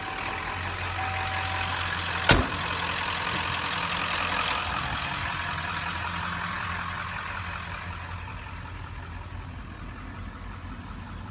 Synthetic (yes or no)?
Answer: no